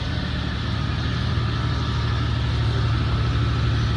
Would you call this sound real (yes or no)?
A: yes